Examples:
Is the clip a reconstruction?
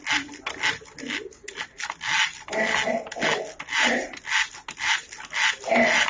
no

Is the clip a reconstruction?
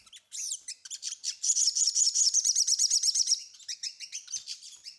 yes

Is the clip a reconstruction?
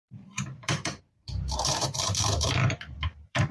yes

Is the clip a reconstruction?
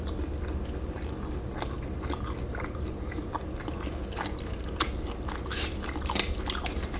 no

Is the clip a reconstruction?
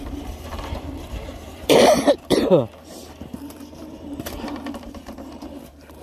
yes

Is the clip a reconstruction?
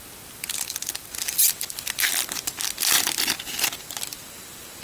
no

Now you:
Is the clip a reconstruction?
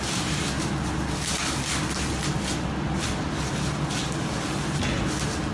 no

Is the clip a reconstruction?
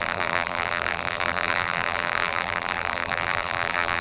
yes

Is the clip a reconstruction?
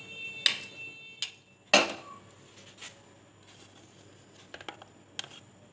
no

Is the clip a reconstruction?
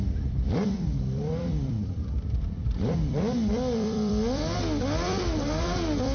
yes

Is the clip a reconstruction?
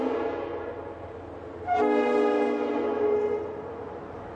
no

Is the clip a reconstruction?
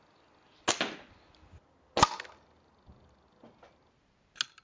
no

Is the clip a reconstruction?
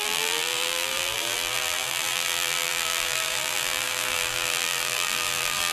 yes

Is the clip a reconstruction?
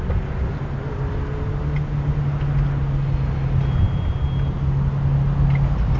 no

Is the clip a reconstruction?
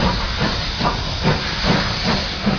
no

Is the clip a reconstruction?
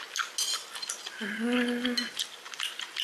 no